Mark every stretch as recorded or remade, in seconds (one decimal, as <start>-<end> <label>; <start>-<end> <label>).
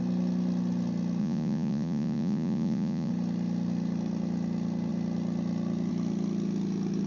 0.0-1.2 recorded; 1.2-3.1 remade; 3.1-7.1 recorded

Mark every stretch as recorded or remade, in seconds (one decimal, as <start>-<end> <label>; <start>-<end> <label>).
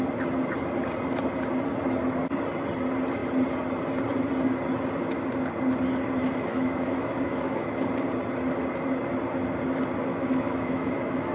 0.0-6.2 recorded; 6.2-7.8 remade; 7.8-10.1 recorded; 10.1-11.3 remade